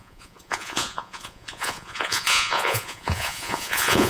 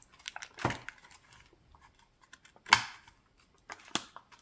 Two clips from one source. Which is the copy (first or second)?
first